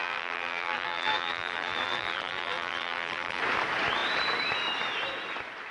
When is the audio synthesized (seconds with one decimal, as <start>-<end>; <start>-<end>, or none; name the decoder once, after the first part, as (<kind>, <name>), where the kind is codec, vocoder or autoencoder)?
0.0-3.4 (vocoder, BigVGAN v2)

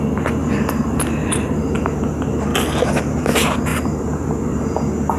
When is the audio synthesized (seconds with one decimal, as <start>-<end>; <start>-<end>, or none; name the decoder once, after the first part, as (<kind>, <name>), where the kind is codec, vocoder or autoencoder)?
0.4-2.0 (vocoder, BigVGAN v2); 3.7-4.7

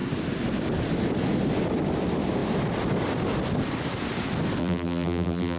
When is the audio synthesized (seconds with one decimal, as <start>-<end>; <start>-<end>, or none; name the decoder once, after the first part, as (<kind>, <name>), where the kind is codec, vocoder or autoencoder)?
4.6-5.6 (vocoder, BigVGAN v2)

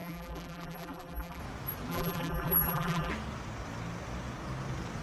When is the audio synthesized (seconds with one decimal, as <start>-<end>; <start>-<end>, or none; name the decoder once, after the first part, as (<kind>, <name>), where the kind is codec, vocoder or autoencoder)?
0.0-1.4 (vocoder, BigVGAN v2); 1.9-3.1